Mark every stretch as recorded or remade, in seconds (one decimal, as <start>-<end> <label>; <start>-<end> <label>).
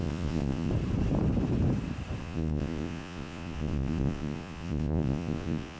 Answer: 0.0-0.7 remade; 0.7-2.2 recorded; 2.2-5.8 remade